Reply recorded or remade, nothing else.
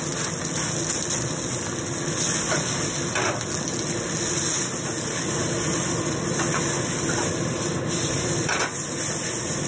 recorded